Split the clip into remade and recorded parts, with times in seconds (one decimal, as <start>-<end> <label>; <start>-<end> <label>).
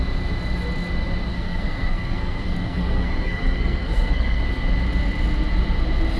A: 0.0-1.3 recorded; 1.3-4.4 remade; 4.4-6.2 recorded